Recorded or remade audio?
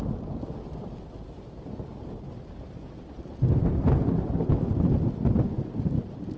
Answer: recorded